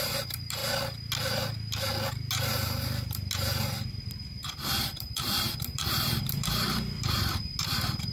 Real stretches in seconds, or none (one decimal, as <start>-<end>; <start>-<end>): 0.6-2.1